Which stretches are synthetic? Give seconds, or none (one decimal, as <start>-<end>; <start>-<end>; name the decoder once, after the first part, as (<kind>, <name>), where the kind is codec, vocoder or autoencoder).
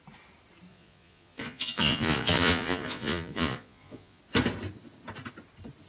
0.7-4.2 (vocoder, Vocos)